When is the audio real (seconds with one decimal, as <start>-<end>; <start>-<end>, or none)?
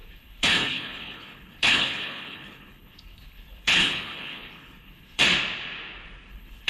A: 5.2-6.3